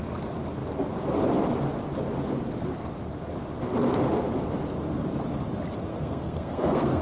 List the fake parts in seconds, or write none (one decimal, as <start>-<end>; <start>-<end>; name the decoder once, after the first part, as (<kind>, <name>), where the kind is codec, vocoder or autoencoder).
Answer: 5.9-7.0 (codec, SNAC)